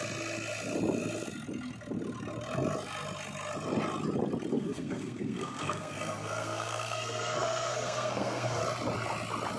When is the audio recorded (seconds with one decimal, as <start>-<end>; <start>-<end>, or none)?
0.0-4.5; 8.6-9.6